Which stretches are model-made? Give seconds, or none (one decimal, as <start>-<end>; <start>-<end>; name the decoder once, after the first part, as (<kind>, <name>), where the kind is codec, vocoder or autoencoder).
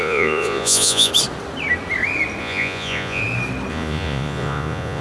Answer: 0.0-1.1 (vocoder, Vocos); 2.4-3.2; 3.7-5.0